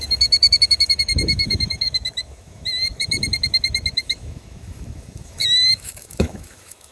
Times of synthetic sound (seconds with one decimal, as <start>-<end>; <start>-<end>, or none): 0.0-6.9